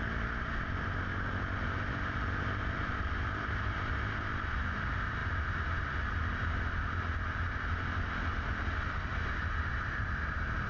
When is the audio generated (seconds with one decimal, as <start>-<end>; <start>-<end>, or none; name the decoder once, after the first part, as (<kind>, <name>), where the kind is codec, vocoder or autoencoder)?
none